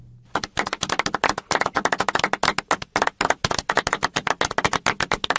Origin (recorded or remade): recorded